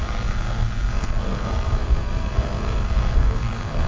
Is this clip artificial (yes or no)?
yes